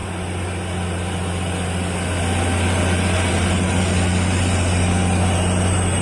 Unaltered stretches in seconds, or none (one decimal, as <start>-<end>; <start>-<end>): 0.0-6.0